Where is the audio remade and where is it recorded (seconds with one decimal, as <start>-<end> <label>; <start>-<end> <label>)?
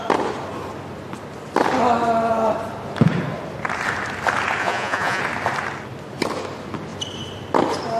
0.0-4.6 recorded; 4.6-5.2 remade; 5.2-8.0 recorded